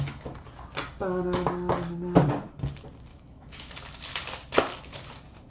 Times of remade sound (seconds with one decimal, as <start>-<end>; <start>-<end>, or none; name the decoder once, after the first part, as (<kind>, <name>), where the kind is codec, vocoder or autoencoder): 3.1-3.7 (autoencoder, DAC-VAE)